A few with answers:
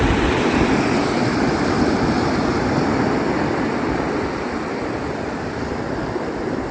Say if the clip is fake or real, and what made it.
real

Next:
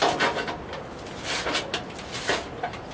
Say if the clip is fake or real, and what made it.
real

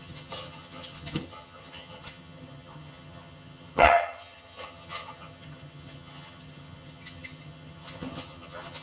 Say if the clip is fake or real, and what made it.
fake, vocoder, HiFi-GAN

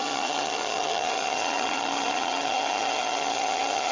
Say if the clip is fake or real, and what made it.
fake, vocoder, HiFi-GAN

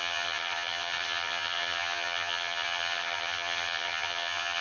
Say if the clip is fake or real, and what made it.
fake, vocoder, HiFi-GAN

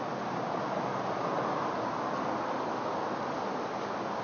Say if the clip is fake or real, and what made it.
real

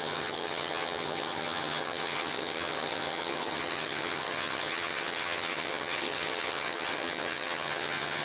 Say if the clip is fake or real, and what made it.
fake, vocoder, HiFi-GAN